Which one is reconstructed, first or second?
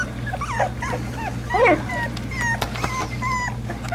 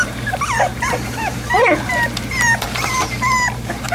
second